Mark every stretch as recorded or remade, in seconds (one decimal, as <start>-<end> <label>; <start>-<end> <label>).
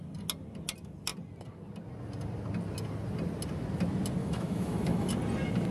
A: 0.0-4.2 recorded; 4.2-5.1 remade; 5.1-5.7 recorded